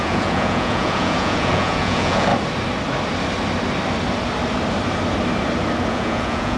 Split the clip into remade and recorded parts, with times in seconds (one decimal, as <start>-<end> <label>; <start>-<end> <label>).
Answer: 0.0-2.3 remade; 2.3-5.9 recorded; 5.9-6.6 remade